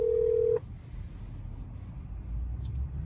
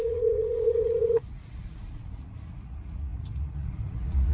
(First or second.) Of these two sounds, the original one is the first